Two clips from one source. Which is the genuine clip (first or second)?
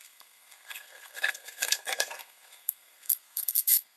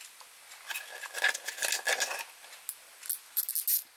second